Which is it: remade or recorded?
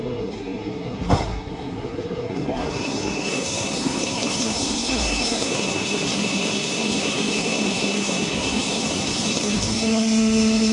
remade